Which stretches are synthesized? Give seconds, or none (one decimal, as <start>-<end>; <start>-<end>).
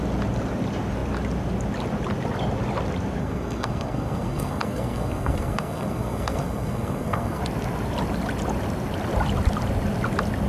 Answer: 3.2-7.4